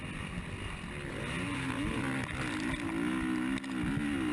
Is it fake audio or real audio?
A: real